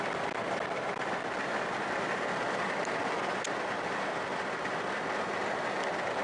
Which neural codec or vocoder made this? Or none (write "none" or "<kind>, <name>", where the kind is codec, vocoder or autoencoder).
none